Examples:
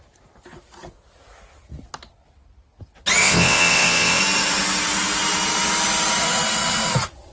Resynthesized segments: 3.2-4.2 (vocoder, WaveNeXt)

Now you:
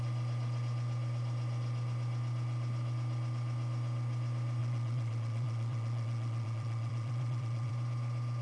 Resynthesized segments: 4.6-7.7 (vocoder, WaveNeXt)